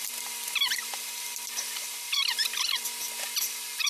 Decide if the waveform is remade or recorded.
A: remade